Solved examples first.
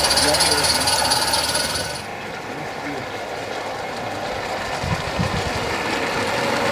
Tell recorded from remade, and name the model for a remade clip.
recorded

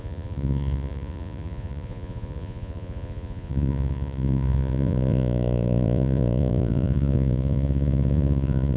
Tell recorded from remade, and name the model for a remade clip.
remade, vocoder, Vocos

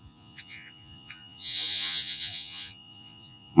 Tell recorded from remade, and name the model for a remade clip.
remade, vocoder, Vocos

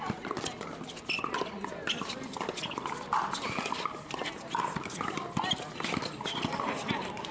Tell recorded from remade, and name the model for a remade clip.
recorded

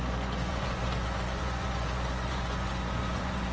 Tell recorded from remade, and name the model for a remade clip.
remade, vocoder, Vocos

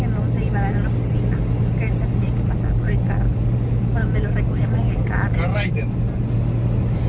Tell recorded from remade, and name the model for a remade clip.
recorded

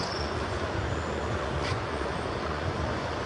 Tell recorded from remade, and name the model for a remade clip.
remade, vocoder, Vocos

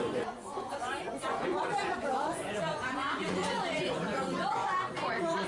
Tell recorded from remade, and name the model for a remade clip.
remade, vocoder, Vocos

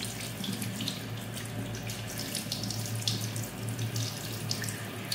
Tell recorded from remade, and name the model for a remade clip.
recorded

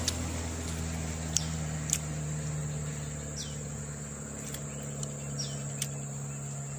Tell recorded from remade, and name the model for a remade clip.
recorded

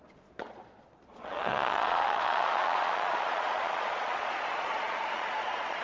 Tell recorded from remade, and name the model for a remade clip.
remade, vocoder, Vocos